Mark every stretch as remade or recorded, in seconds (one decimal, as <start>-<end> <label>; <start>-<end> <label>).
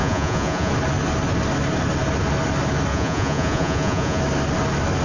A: 0.0-0.7 remade; 0.7-2.9 recorded; 2.9-4.2 remade; 4.2-5.0 recorded